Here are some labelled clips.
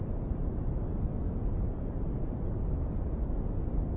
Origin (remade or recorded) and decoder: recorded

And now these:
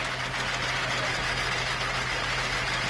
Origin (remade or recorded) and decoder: recorded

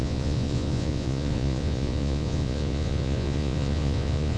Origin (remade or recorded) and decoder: remade, vocoder, Vocos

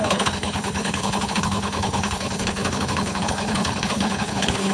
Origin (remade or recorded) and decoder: remade, codec, HILCodec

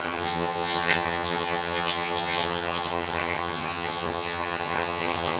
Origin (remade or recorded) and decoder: remade, vocoder, HiFi-GAN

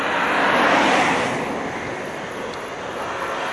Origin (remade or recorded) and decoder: recorded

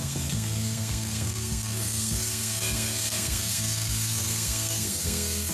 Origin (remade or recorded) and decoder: remade, codec, SNAC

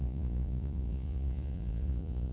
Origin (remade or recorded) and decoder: remade, vocoder, Vocos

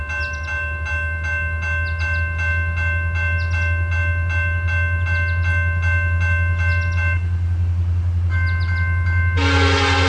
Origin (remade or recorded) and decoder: recorded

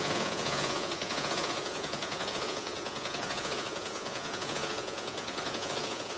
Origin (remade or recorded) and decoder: remade, vocoder, Vocos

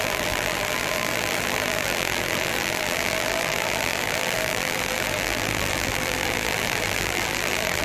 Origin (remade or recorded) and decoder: remade, vocoder, BigVGAN v2